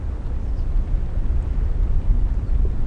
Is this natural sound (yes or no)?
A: yes